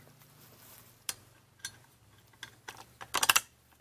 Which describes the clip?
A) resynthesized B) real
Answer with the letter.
B